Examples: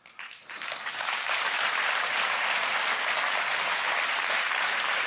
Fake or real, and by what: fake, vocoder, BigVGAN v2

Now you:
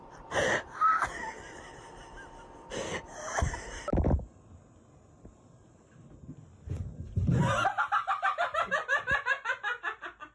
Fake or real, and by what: fake, vocoder, BigVGAN v2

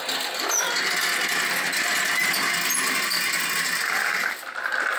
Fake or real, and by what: real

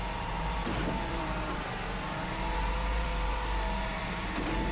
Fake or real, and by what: fake, vocoder, BigVGAN v2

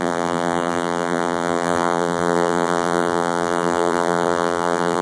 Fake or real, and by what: fake, vocoder, BigVGAN v2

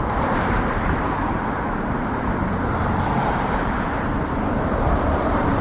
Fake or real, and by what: fake, vocoder, BigVGAN v2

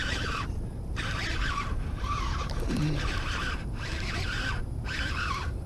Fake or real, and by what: fake, vocoder, BigVGAN v2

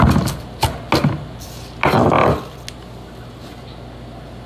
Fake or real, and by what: real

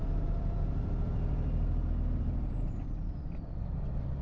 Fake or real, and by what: fake, vocoder, BigVGAN v2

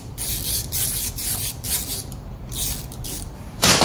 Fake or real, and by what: fake, vocoder, BigVGAN v2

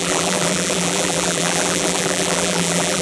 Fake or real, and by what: fake, vocoder, BigVGAN v2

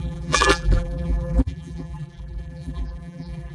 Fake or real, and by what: fake, vocoder, BigVGAN v2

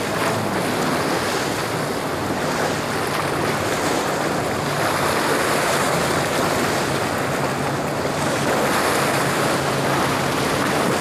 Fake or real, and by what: real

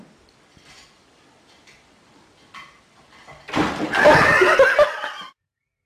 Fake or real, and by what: real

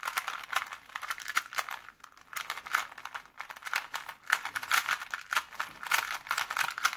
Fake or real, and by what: real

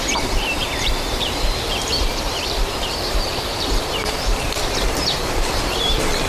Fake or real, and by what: fake, vocoder, BigVGAN v2